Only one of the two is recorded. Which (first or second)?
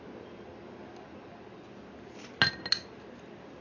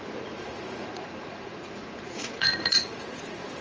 first